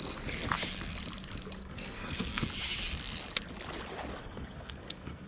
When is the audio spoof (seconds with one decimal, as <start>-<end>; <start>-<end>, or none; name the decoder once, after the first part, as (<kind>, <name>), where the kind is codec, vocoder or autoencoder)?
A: 1.6-2.4 (codec, SNAC); 4.2-5.3